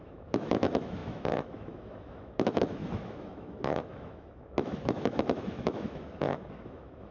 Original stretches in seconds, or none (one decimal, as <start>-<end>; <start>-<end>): none